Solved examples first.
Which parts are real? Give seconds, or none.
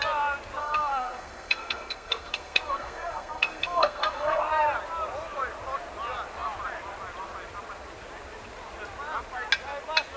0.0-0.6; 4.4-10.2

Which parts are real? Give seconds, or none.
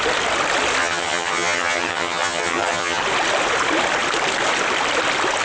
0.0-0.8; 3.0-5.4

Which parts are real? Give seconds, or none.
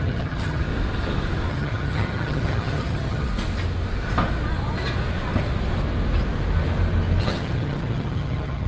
0.7-1.5; 3.3-7.2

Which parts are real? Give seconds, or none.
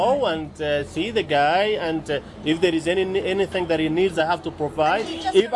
0.0-5.6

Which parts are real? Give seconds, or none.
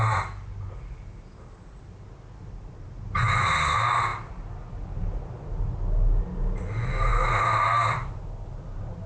0.0-9.1